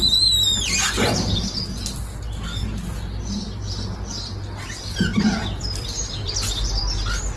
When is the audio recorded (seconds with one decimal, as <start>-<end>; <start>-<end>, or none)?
0.0-5.4; 6.8-7.4